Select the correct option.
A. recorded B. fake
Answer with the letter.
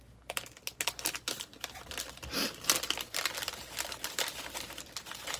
A